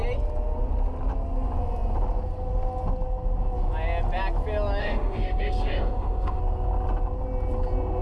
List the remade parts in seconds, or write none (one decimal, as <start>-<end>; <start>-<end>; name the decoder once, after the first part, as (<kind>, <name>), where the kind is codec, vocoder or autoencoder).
4.8-6.4 (autoencoder, DAC-VAE)